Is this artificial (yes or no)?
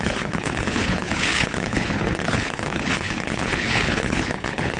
yes